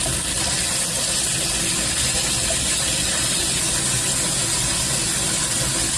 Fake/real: real